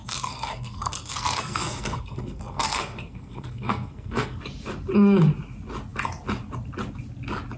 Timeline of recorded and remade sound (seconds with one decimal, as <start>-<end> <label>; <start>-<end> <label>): 0.0-4.4 remade; 4.4-7.6 recorded